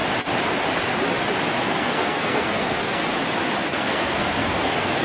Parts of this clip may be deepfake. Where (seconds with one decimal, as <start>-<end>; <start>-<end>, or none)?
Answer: 1.6-3.0; 3.7-5.0